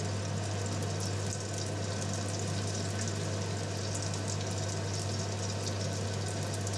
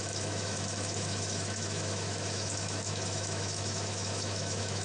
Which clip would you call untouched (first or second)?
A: first